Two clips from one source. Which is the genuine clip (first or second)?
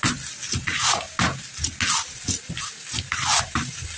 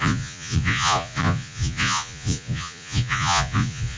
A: first